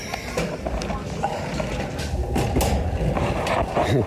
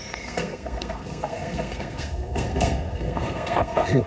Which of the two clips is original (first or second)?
first